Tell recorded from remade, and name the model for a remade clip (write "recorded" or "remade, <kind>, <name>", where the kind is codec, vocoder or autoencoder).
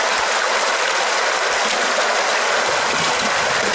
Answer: recorded